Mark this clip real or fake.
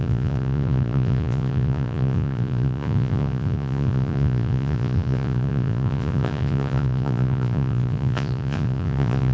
fake